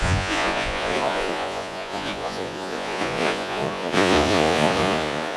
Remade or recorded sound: remade